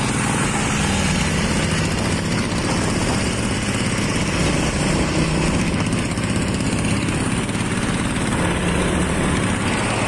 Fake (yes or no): no